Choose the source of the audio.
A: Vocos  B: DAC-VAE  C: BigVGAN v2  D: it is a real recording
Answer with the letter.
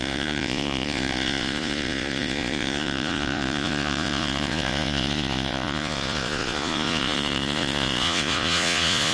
A